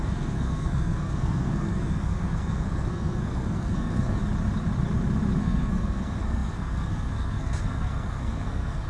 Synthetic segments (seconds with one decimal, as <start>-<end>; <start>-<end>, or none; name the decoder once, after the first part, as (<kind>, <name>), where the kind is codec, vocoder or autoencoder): 0.0-4.2 (codec, SNAC); 5.4-8.9

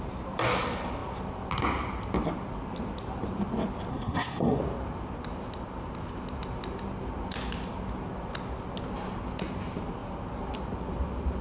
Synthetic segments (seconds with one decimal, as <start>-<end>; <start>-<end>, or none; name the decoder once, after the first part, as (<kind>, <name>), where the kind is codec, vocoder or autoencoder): 3.9-4.6 (codec, SNAC)